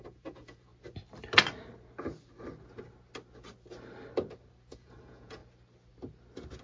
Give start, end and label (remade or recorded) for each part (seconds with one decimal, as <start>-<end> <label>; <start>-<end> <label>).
0.0-0.7 remade; 0.7-4.7 recorded; 4.7-5.4 remade; 5.4-6.6 recorded